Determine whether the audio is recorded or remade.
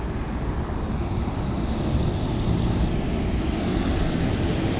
recorded